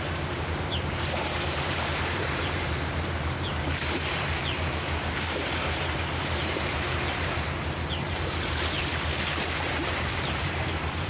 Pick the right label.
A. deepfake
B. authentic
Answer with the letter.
A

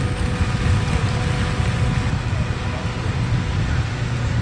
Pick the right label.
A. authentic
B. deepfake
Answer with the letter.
A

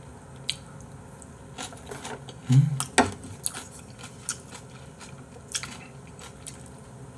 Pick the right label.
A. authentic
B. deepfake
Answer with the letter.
A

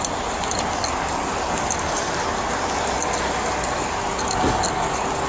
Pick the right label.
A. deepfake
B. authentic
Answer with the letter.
B